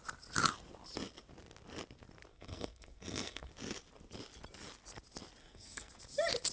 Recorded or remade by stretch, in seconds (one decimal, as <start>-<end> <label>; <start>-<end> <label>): 0.0-2.3 recorded; 2.3-3.5 remade; 3.5-5.4 recorded; 5.4-5.9 remade; 5.9-6.5 recorded